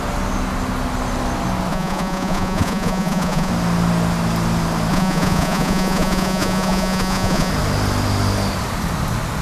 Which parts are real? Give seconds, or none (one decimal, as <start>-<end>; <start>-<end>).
0.0-1.7; 3.5-4.9; 7.5-9.4